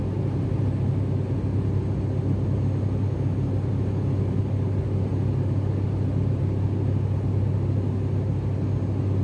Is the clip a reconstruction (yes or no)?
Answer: no